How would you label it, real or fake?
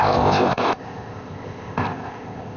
fake